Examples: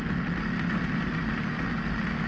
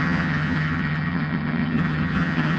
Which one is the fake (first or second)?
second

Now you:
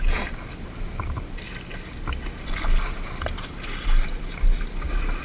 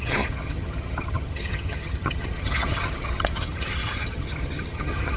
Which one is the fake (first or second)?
second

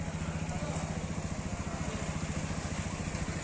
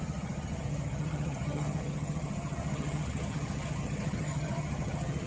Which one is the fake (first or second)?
second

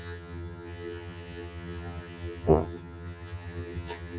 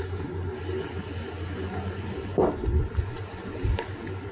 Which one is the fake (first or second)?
first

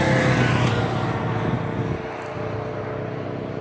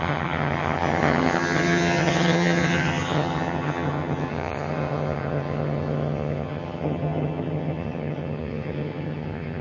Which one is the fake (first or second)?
second